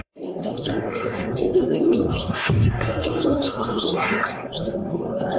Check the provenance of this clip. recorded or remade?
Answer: remade